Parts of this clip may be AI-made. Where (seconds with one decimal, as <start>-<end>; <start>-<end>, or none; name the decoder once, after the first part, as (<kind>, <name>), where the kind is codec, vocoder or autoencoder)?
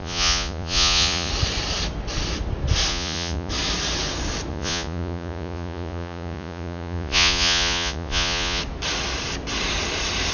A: 0.0-1.3 (vocoder, Vocos); 2.9-3.5; 4.5-8.6